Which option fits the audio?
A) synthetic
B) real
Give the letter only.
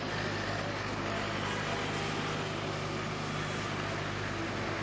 B